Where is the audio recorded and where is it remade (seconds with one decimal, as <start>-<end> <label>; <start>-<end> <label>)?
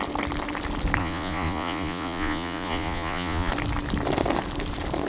0.0-1.0 recorded; 1.0-3.5 remade; 3.5-5.1 recorded